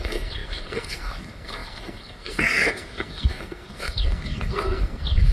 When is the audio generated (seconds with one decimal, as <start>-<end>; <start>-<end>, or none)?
0.0-5.3